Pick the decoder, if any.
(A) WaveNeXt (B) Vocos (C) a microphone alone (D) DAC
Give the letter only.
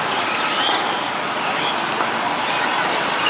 C